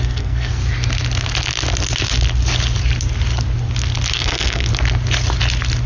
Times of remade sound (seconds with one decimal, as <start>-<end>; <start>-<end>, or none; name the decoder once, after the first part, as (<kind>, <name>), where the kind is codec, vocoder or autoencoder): 0.0-0.6 (codec, SNAC); 4.1-4.7